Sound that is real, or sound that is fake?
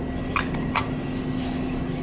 real